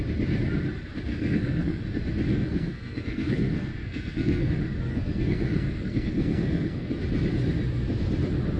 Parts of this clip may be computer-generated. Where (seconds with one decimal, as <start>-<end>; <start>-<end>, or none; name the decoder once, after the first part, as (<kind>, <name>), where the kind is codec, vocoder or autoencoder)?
1.1-1.8 (codec, SNAC); 2.3-4.5; 4.9-6.9